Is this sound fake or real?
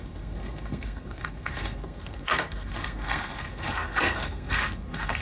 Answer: fake